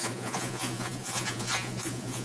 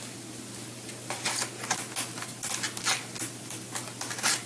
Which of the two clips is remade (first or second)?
first